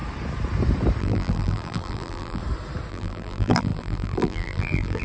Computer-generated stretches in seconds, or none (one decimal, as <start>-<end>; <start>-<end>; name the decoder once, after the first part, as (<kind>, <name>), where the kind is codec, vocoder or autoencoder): 1.0-2.4 (vocoder, BigVGAN v2); 2.9-5.0